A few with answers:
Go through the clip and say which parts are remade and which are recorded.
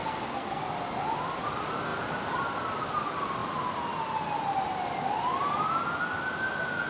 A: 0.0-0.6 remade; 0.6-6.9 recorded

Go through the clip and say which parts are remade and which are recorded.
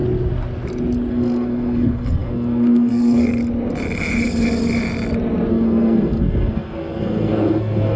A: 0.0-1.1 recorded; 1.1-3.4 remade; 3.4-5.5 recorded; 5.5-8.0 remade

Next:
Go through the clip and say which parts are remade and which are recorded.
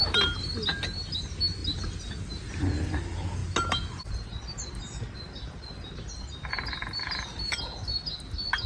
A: 0.0-8.7 recorded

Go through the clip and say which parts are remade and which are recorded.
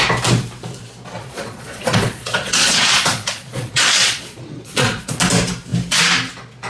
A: 0.0-1.2 recorded; 1.2-5.2 remade; 5.2-6.7 recorded